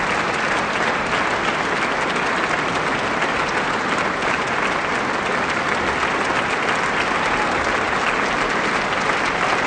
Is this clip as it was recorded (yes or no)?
yes